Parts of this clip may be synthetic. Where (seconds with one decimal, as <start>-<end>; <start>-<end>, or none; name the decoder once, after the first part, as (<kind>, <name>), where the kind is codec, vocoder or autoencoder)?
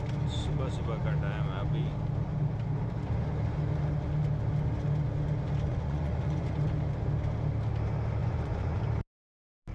5.7-6.5 (vocoder, Vocos); 8.2-8.8